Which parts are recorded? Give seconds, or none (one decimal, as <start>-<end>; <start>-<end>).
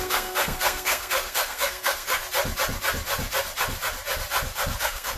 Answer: 2.2-4.8